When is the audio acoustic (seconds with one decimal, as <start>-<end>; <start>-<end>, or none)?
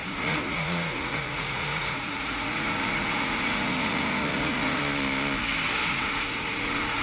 4.8-5.9